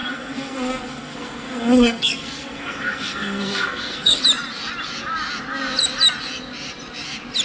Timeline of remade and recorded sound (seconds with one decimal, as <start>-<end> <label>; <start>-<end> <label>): 0.0-4.2 remade; 4.2-7.4 recorded